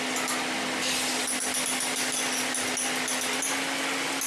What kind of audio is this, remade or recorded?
recorded